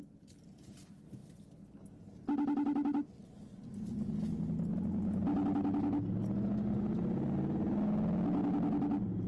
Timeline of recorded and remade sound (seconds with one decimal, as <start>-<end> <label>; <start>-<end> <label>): 0.0-9.3 recorded